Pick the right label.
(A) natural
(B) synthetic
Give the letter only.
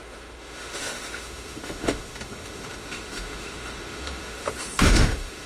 B